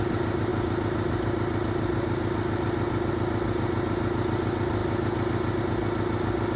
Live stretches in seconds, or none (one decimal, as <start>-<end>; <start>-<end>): 0.0-6.6